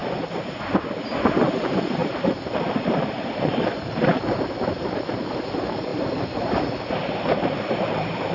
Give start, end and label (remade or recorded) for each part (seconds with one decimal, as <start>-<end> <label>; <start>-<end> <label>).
0.0-1.5 recorded; 1.5-8.3 remade